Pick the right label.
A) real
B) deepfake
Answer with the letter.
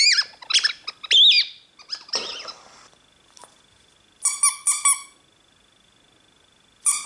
A